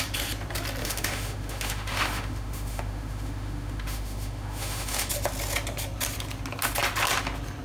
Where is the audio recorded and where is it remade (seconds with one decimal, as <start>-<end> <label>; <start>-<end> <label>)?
0.0-0.8 recorded; 0.8-5.1 remade; 5.1-7.6 recorded